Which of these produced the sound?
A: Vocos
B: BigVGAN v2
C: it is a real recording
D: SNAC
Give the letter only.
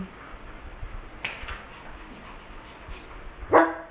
C